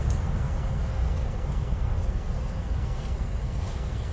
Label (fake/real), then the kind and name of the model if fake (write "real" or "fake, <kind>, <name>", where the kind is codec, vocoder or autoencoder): fake, codec, SNAC